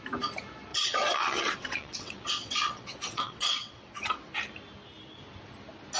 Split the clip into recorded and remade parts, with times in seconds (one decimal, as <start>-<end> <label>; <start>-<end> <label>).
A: 0.0-0.7 recorded; 0.7-4.3 remade; 4.3-6.0 recorded